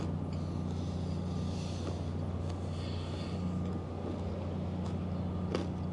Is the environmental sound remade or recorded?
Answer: recorded